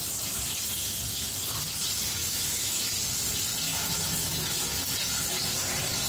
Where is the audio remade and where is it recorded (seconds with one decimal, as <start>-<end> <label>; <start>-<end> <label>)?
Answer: 0.0-2.2 recorded; 2.2-2.9 remade; 2.9-3.7 recorded; 3.7-4.8 remade; 4.8-6.1 recorded